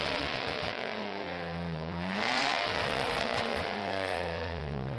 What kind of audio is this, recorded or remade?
remade